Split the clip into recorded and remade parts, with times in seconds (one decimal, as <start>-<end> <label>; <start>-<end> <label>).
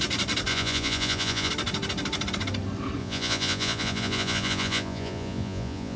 0.0-0.5 recorded; 0.5-1.5 remade; 1.5-3.0 recorded; 3.0-6.0 remade